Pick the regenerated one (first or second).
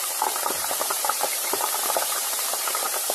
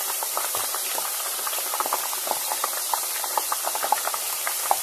first